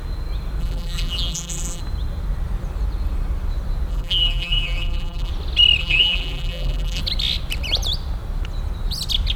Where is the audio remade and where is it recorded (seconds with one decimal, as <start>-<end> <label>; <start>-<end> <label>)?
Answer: 0.0-0.6 recorded; 0.6-1.8 remade; 1.8-3.9 recorded; 3.9-5.3 remade; 5.3-5.8 recorded; 5.8-7.0 remade; 7.0-9.4 recorded

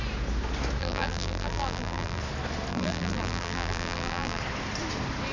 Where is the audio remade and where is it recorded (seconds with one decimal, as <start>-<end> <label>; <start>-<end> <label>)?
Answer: 0.0-0.8 recorded; 0.8-2.2 remade; 2.2-2.7 recorded; 2.7-4.4 remade; 4.4-5.3 recorded

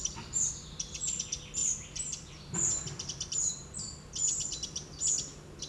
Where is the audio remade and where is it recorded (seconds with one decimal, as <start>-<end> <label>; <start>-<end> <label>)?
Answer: 0.0-1.0 remade; 1.0-1.6 recorded; 1.6-5.0 remade; 5.0-5.7 recorded

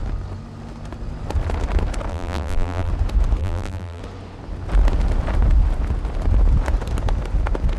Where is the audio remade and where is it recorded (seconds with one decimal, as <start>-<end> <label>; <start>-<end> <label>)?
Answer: 0.0-2.1 recorded; 2.1-2.9 remade; 2.9-3.4 recorded; 3.4-4.0 remade; 4.0-7.8 recorded

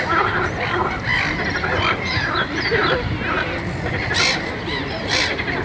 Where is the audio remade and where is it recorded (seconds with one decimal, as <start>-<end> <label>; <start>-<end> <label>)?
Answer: 0.0-0.8 remade; 0.8-2.3 recorded; 2.3-2.8 remade; 2.8-3.3 recorded; 3.3-5.6 remade

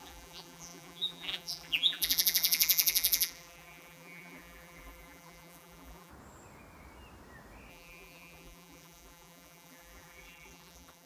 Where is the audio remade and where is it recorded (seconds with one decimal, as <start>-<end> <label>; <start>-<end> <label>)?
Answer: 0.0-6.1 remade; 6.1-7.7 recorded; 7.7-11.1 remade

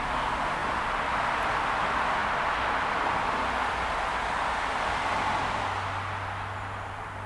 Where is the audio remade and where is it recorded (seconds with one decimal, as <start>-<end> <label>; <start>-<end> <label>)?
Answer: 0.0-7.3 recorded